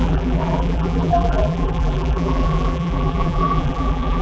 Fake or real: fake